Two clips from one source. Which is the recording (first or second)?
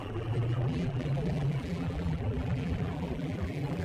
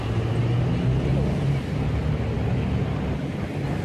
second